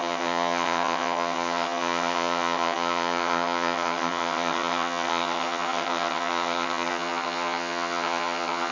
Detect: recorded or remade remade